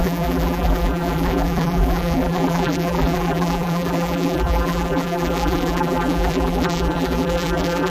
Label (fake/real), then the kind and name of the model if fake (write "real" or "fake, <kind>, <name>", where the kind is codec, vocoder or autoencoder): fake, vocoder, BigVGAN v2